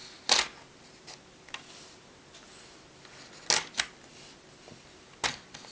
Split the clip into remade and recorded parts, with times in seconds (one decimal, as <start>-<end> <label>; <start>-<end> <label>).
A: 0.0-5.7 recorded